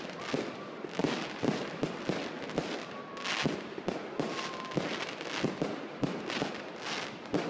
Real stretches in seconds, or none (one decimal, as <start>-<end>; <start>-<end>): 0.0-7.5